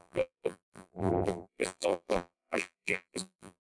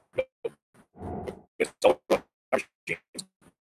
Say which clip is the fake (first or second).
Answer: first